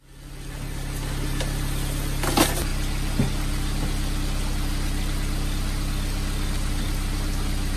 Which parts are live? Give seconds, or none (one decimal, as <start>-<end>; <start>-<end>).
0.0-7.8